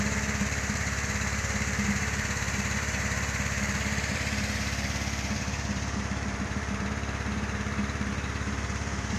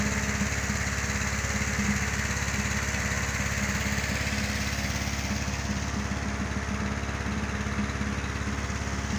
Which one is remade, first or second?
first